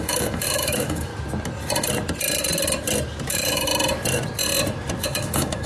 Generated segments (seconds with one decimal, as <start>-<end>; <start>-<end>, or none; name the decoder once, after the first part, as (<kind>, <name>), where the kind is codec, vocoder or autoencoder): 0.0-1.1 (autoencoder, DAC-VAE); 3.3-3.7; 5.0-5.7